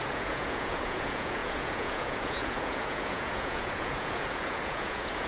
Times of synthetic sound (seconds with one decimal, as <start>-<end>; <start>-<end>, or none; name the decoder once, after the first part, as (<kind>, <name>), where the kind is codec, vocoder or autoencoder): 0.0-5.3 (vocoder, Vocos)